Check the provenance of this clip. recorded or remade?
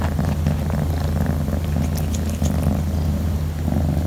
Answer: recorded